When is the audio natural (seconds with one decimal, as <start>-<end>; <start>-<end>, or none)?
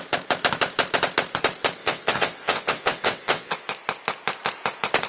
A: 0.0-1.8; 3.7-5.1